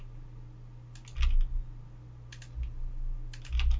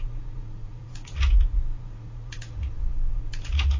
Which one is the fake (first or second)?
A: second